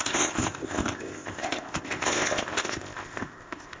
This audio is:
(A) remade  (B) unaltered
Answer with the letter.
A